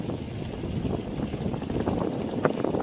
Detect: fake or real real